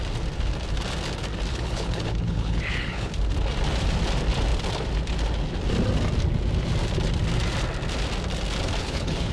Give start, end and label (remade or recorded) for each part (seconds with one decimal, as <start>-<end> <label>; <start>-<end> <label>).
0.0-1.5 recorded; 1.5-3.1 remade; 3.1-8.8 recorded; 8.8-9.3 remade